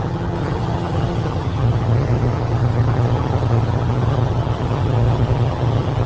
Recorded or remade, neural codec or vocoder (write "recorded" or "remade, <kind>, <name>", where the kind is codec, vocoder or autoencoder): remade, vocoder, HiFi-GAN